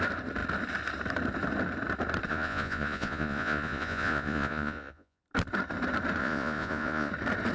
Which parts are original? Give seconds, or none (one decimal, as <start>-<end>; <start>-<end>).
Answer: 0.0-2.3; 5.2-6.2; 7.1-7.5